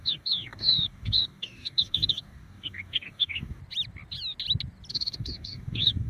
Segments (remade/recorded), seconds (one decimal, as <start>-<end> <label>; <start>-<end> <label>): 0.0-3.6 remade; 3.6-4.9 recorded; 4.9-6.1 remade